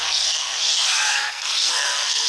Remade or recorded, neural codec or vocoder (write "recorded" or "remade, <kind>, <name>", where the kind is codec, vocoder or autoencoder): remade, codec, SNAC